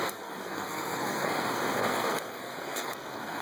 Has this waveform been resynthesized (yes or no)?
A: yes